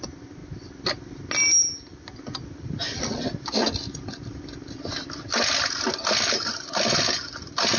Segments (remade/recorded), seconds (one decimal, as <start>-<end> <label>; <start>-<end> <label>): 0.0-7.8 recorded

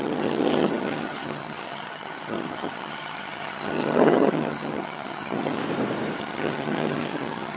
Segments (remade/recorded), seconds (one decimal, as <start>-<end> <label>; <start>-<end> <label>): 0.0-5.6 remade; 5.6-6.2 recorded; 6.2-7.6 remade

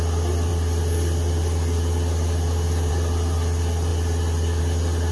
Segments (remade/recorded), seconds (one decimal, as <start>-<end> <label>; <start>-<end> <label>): 0.0-5.1 recorded

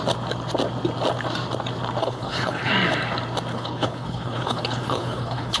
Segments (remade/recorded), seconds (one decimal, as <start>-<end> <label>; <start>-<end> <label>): 0.0-2.0 recorded; 2.0-2.7 remade; 2.7-3.5 recorded; 3.5-5.6 remade